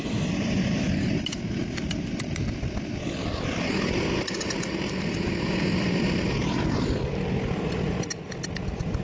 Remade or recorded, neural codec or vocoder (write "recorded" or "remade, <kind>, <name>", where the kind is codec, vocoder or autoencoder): recorded